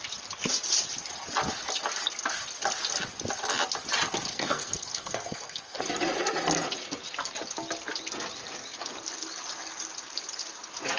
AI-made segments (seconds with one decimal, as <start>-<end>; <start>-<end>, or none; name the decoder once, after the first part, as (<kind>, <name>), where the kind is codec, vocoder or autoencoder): 4.3-5.8 (codec, SNAC)